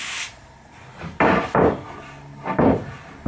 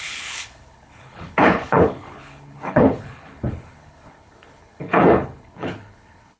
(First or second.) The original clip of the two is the first